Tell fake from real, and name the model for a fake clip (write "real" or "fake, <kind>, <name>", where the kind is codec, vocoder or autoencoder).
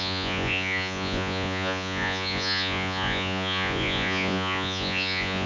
fake, vocoder, Vocos